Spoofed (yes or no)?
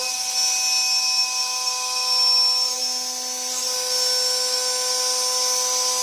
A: no